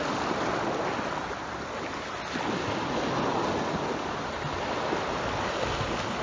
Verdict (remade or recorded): recorded